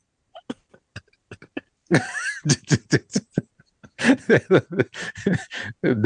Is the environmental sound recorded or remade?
remade